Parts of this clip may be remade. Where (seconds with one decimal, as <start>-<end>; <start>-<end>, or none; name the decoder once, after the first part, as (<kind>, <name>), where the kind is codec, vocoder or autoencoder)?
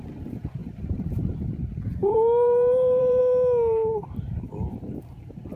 0.6-1.5 (vocoder, BigVGAN v2); 2.0-3.2